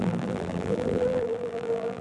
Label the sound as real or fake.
fake